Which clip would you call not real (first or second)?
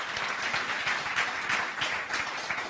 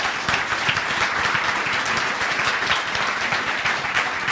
second